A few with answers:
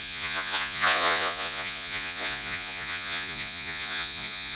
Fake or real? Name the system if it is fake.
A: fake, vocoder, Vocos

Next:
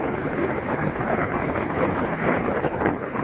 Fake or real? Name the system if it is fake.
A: fake, codec, HILCodec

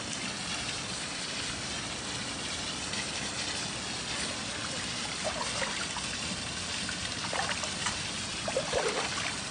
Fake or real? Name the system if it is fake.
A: real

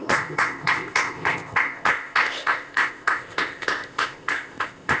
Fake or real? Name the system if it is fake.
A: fake, codec, ZipCodec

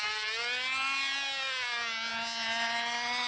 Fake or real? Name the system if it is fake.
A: real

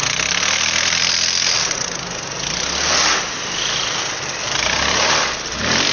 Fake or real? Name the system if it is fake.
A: real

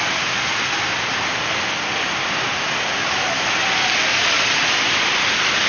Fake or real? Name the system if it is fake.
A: real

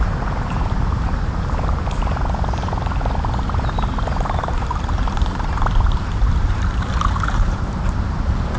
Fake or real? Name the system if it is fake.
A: fake, vocoder, BigVGAN v2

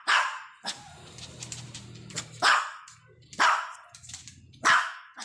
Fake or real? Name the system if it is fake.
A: real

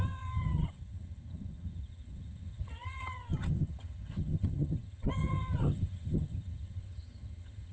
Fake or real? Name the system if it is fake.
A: fake, vocoder, HiFi-GAN